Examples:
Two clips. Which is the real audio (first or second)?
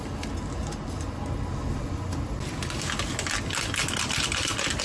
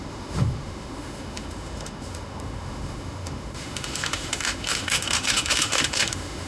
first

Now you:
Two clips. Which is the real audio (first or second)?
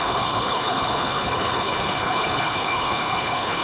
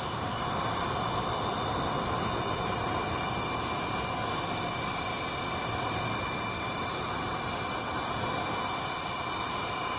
second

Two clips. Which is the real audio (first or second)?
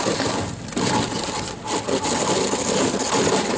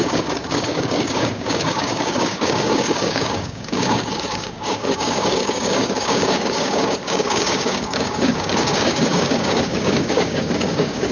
first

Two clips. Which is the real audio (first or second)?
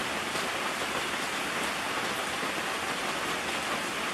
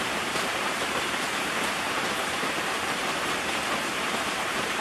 first